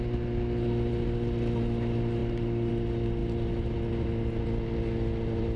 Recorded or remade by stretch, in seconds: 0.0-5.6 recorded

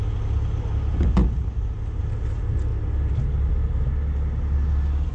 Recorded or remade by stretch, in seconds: 0.0-5.1 recorded

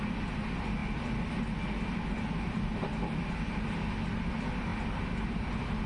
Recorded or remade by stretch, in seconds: 0.0-5.9 recorded